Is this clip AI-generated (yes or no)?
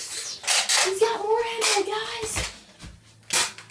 no